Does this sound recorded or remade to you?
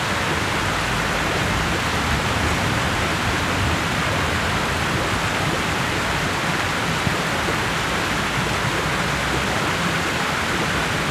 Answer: recorded